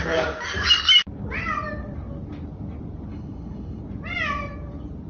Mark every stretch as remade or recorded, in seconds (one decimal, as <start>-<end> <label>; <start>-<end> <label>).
0.0-3.1 recorded; 3.1-3.8 remade; 3.8-5.1 recorded